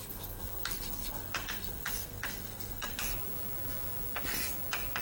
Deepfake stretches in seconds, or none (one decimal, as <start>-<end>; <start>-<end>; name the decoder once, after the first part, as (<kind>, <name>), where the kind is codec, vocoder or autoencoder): 0.0-3.0 (codec, SNAC)